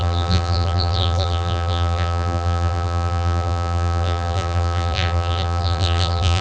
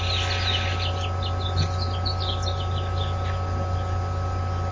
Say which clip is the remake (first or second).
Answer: first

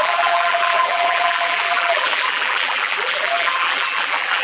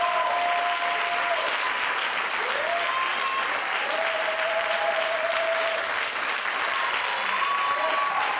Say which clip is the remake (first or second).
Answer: first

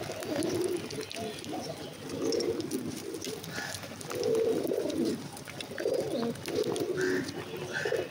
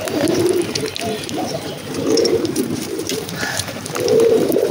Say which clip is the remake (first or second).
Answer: second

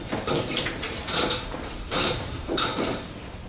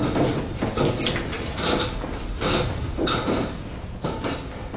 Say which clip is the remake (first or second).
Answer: first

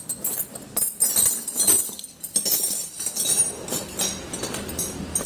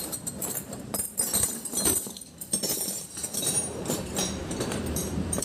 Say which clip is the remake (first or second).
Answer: second